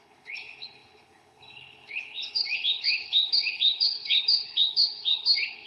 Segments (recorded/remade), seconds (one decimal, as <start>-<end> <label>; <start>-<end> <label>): 0.0-5.7 remade